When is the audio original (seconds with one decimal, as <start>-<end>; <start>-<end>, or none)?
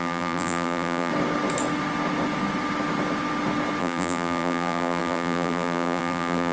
1.1-3.8